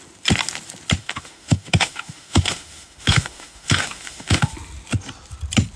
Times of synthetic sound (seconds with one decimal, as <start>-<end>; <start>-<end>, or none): 1.0-4.5